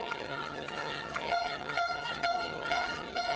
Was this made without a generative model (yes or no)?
no